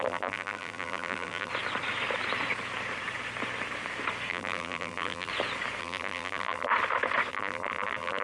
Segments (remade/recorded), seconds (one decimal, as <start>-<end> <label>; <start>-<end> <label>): 0.0-1.5 remade; 1.5-4.3 recorded; 4.3-5.3 remade; 5.3-5.8 recorded; 5.8-6.7 remade; 6.7-7.3 recorded; 7.3-8.2 remade

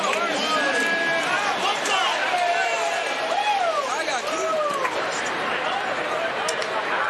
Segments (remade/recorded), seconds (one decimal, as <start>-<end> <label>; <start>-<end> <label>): 0.0-4.1 recorded; 4.1-6.6 remade; 6.6-7.1 recorded

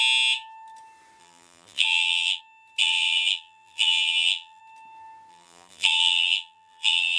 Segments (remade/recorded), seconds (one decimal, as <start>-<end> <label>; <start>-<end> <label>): 0.0-1.2 recorded; 1.2-2.4 remade; 2.4-2.8 recorded; 2.8-4.6 remade; 4.6-5.3 recorded; 5.3-7.2 remade

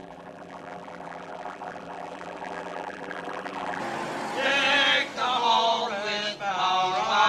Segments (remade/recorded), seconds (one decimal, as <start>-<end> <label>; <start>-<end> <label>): 0.0-3.8 remade; 3.8-7.3 recorded

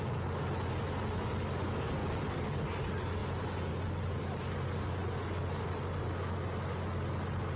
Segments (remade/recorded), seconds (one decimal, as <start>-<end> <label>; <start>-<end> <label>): 0.0-2.0 recorded; 2.0-2.6 remade; 2.6-7.6 recorded